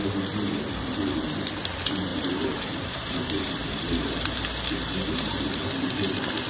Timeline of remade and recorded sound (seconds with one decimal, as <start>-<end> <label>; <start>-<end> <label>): 0.0-0.7 remade; 0.7-2.1 recorded; 2.1-5.5 remade; 5.5-6.5 recorded